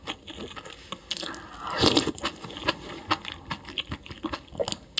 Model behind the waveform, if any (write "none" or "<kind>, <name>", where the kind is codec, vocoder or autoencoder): none